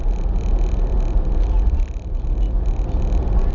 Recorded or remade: recorded